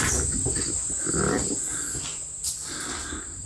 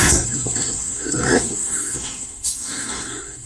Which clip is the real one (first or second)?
first